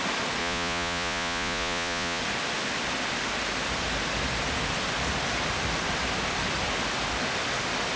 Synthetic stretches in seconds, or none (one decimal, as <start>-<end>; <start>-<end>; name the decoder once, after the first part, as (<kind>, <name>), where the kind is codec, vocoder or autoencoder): 0.4-2.2 (vocoder, Vocos)